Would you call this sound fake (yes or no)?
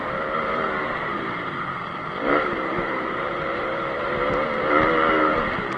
yes